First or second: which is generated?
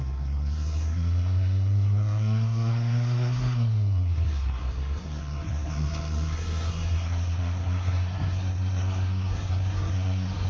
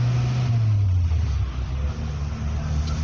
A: first